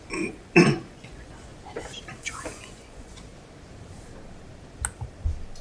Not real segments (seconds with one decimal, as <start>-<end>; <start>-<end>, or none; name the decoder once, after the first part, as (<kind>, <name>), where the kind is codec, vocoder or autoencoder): 0.0-1.5 (vocoder, Vocos); 2.2-3.3